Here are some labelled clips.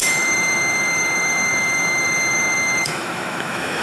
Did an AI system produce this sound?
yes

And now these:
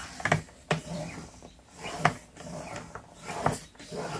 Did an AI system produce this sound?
no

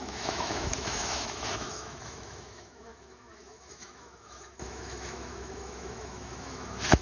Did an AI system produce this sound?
yes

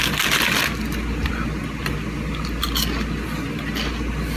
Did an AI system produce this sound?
no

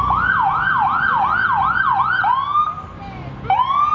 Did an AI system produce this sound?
no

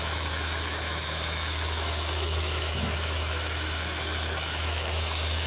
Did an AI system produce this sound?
yes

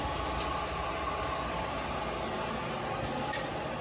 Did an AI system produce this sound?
no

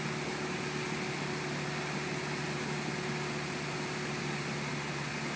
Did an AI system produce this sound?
no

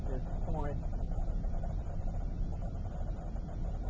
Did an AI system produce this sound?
no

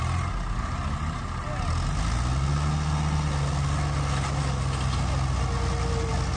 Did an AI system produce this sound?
no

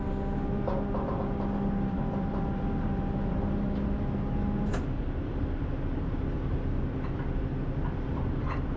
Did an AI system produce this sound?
no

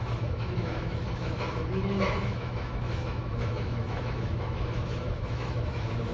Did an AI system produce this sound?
yes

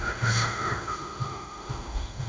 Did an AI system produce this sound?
yes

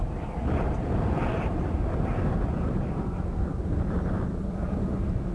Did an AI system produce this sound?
no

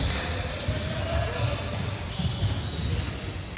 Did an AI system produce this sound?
no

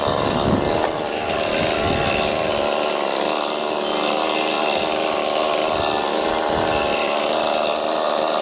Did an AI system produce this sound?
no